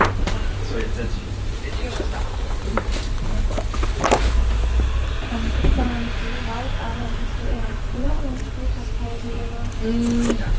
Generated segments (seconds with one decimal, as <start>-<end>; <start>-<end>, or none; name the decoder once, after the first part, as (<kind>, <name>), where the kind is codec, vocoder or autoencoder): 1.5-2.6 (vocoder, Vocos); 6.9-8.2